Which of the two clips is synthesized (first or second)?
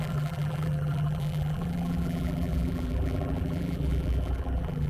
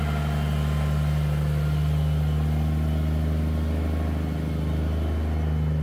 first